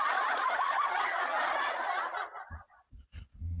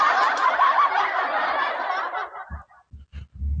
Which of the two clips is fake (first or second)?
first